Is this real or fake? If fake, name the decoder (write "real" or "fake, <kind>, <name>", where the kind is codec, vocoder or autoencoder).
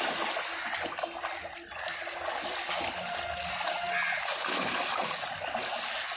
real